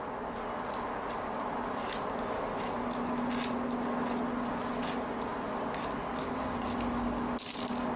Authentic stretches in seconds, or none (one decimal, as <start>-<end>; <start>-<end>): 0.0-8.0